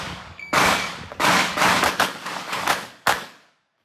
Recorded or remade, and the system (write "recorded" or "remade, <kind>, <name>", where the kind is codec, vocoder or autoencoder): remade, codec, DAC